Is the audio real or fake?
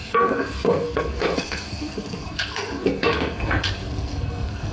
fake